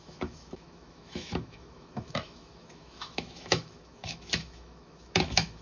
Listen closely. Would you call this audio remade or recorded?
remade